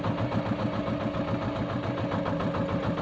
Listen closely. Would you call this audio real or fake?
real